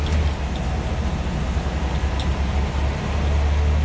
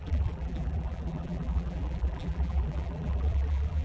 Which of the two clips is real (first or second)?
first